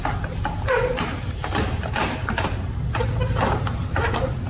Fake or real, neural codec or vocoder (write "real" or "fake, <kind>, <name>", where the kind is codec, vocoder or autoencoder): real